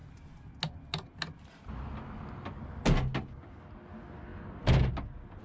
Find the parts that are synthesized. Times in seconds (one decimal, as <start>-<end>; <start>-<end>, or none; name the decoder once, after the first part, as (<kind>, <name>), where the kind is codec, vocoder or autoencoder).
none